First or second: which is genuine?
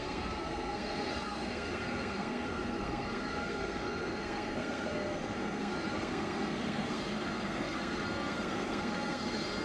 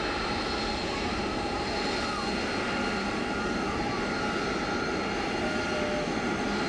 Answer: second